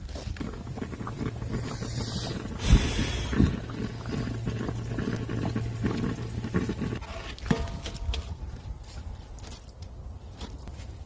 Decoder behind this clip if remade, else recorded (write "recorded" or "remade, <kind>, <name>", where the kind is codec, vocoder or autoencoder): recorded